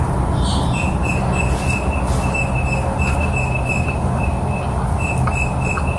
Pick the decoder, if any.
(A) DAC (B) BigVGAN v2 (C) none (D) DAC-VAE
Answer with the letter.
C